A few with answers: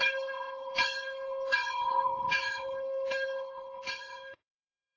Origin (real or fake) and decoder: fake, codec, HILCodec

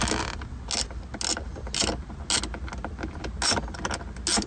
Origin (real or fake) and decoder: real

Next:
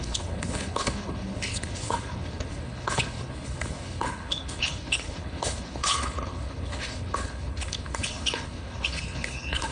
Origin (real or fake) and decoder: fake, codec, HILCodec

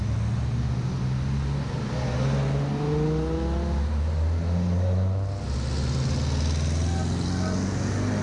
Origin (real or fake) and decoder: real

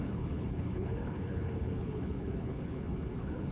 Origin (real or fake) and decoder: fake, codec, HILCodec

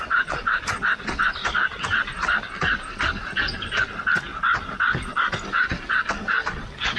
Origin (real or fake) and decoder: real